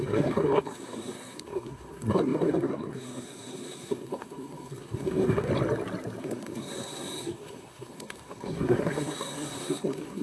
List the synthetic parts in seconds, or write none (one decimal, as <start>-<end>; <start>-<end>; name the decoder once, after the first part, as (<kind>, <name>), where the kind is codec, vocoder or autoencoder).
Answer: 0.0-5.5 (codec, SNAC); 6.2-10.2